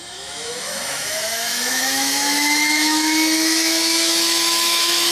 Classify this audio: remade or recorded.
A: remade